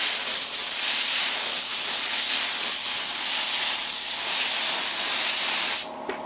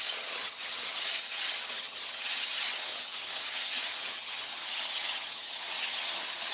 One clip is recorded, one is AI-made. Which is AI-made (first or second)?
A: second